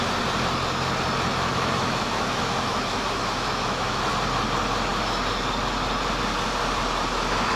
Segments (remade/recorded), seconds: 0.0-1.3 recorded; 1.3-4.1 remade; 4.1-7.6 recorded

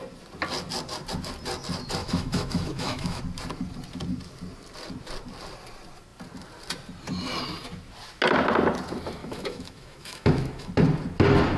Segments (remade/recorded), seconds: 0.0-2.0 recorded; 2.0-3.2 remade; 3.2-9.2 recorded; 9.2-10.7 remade; 10.7-11.6 recorded

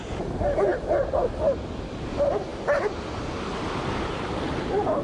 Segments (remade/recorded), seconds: 0.0-5.0 recorded

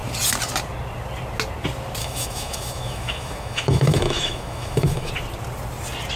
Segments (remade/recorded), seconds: 0.0-2.0 recorded; 2.0-5.1 remade; 5.1-6.2 recorded

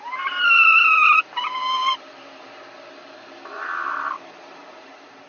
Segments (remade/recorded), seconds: 0.0-1.8 recorded; 1.8-5.3 remade

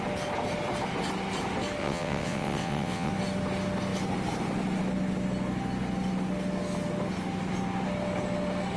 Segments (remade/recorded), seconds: 0.0-1.8 recorded; 1.8-3.1 remade; 3.1-8.8 recorded